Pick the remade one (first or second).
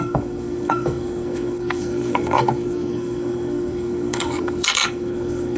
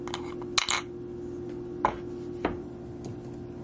first